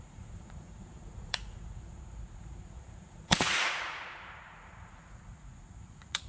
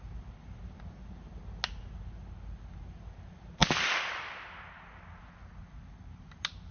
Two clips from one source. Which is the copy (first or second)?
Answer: first